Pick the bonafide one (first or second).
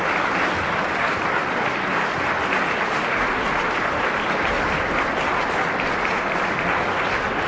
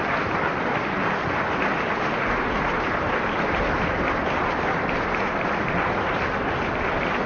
first